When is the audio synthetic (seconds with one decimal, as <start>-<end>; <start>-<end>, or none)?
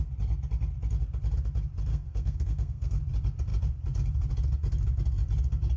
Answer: 1.9-3.0